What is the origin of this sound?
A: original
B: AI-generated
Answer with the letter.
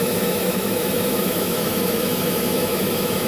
B